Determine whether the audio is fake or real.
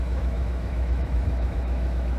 fake